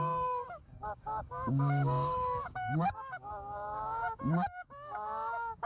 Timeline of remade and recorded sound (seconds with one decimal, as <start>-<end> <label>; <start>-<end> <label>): 0.0-5.7 remade